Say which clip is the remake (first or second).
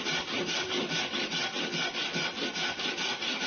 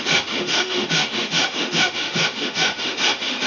second